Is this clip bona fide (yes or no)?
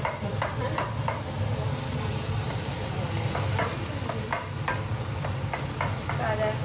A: yes